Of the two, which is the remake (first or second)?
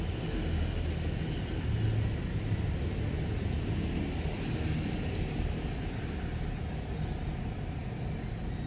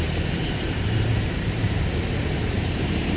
second